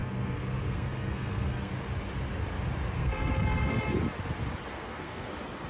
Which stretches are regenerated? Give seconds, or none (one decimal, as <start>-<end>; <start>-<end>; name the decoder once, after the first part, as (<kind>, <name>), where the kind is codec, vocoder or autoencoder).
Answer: 0.0-1.7 (codec, SNAC); 3.0-3.8; 4.7-5.3